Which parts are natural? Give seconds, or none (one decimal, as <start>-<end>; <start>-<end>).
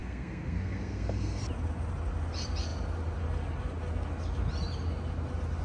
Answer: 1.4-5.6